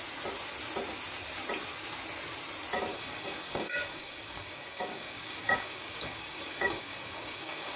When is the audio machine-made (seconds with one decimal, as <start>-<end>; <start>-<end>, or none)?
2.9-7.8